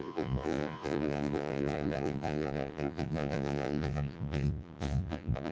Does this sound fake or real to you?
fake